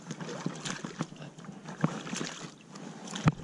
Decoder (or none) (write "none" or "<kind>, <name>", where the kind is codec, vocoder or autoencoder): none